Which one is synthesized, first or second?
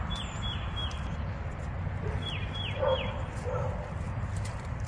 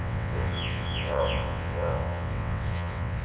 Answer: second